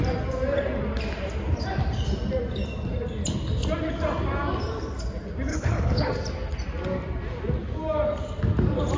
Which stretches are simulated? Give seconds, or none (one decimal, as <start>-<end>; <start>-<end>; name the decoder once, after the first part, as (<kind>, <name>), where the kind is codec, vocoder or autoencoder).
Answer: 5.5-6.1 (codec, HILCodec)